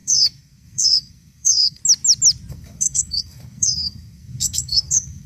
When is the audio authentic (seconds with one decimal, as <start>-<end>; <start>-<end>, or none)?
1.8-2.5